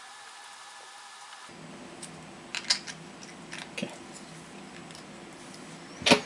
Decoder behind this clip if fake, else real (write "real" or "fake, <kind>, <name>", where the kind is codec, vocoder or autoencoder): real